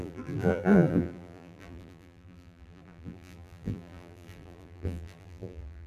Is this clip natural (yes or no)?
no